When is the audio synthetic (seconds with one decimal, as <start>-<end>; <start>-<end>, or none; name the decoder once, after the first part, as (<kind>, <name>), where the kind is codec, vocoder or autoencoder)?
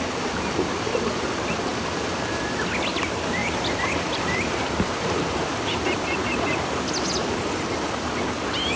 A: 1.7-2.4 (vocoder, BigVGAN v2); 3.4-6.9